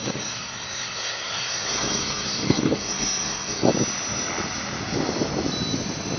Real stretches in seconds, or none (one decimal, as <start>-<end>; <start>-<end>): 3.7-6.2